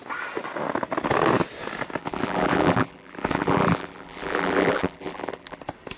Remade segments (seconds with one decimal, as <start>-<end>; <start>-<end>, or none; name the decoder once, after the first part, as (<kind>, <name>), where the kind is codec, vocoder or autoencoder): 2.0-5.6 (vocoder, BigVGAN v2)